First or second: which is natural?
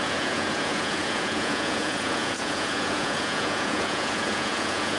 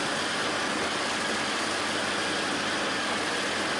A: second